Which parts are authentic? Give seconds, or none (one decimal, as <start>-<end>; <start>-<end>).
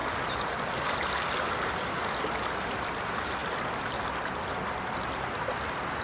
0.0-6.0